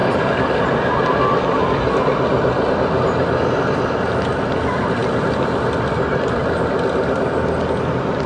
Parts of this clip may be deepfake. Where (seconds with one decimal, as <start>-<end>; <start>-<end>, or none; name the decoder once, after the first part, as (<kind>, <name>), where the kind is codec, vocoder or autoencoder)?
0.0-0.6 (codec, DAC)